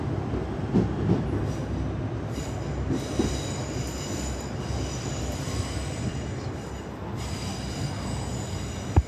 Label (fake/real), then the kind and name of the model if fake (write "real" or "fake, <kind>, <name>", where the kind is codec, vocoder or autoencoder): real